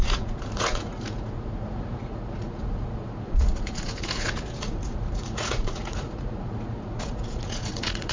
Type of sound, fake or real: fake